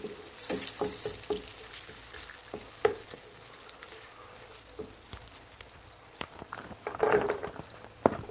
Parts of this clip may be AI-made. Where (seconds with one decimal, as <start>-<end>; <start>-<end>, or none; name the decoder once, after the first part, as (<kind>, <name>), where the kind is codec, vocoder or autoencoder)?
none